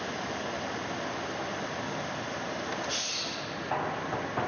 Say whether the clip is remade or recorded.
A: recorded